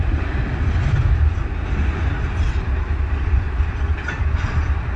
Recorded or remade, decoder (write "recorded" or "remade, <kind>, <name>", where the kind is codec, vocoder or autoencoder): remade, vocoder, BigVGAN v2